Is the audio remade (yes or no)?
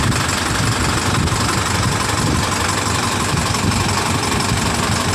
no